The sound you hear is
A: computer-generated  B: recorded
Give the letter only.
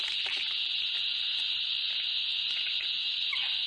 B